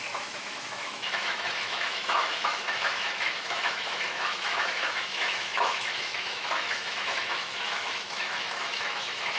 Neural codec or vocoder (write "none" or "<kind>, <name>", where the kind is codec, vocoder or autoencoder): autoencoder, DAC-VAE